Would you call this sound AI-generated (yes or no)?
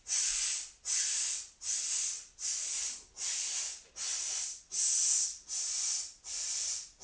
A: no